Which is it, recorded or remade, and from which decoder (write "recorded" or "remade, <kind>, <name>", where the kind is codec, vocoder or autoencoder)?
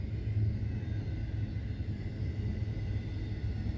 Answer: recorded